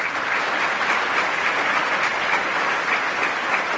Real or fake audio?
real